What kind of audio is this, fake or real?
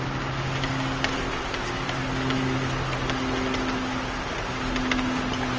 real